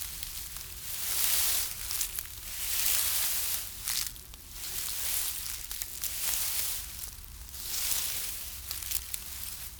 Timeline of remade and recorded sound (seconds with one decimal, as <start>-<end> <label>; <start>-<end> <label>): 0.0-9.8 recorded